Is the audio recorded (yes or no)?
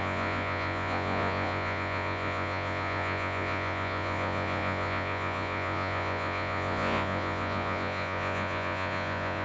no